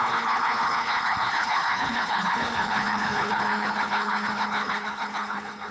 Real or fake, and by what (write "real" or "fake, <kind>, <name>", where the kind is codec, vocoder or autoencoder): fake, codec, HILCodec